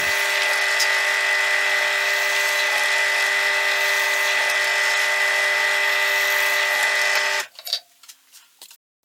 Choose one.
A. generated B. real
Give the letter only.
B